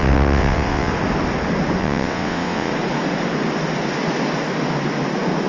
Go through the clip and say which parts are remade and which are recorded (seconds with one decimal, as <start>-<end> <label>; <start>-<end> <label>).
0.0-0.9 remade; 0.9-1.8 recorded; 1.8-2.7 remade; 2.7-5.5 recorded